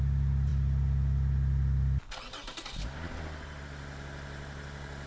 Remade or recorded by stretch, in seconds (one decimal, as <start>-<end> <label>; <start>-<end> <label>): 0.0-5.1 recorded

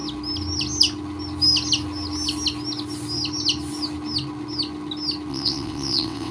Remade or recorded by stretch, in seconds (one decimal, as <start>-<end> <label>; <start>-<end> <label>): 0.0-5.3 recorded; 5.3-6.3 remade

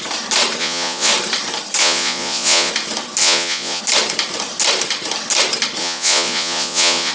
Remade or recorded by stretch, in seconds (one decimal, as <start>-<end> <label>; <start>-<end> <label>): 0.0-0.6 recorded; 0.6-1.1 remade; 1.1-1.8 recorded; 1.8-2.7 remade; 2.7-3.2 recorded; 3.2-3.8 remade; 3.8-5.8 recorded; 5.8-7.1 remade

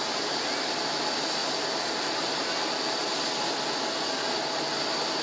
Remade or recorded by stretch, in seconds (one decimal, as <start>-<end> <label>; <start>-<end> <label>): 0.0-5.2 recorded